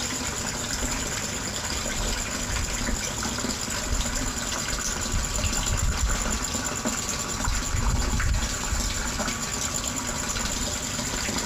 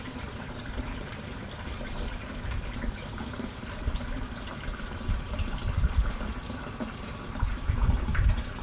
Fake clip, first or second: second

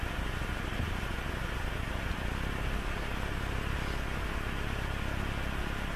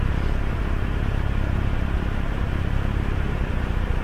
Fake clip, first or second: second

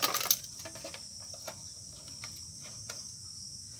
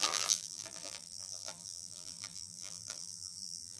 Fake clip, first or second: second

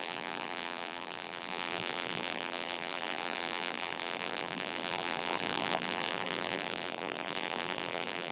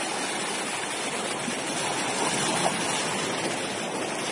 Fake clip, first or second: first